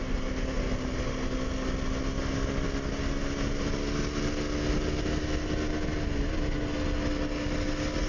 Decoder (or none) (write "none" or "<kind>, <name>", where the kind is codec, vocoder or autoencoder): none